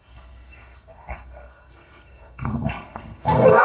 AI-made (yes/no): yes